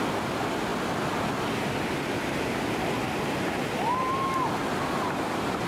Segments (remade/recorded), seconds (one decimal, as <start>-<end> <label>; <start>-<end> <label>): 0.0-5.7 recorded